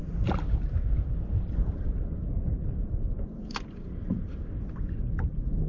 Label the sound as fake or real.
real